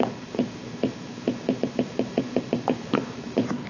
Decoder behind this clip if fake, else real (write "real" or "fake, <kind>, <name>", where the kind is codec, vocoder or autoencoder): fake, vocoder, BigVGAN v2